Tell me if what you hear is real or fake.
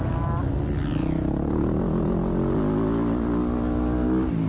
real